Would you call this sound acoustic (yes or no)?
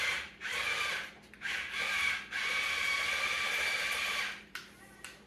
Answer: no